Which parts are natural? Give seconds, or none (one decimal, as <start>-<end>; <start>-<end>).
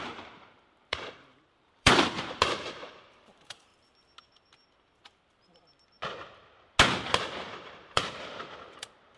3.7-7.5